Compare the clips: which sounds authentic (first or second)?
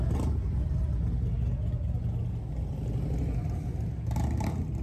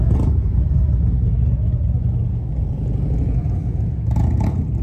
first